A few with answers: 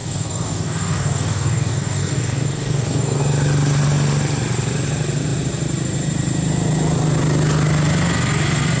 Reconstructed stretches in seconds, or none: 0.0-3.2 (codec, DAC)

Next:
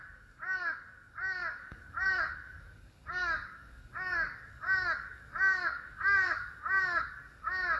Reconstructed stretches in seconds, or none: 0.0-7.8 (codec, DAC)